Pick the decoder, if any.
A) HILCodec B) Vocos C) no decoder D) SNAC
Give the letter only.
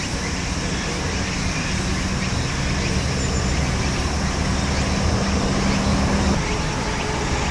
C